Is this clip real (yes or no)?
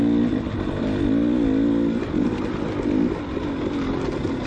yes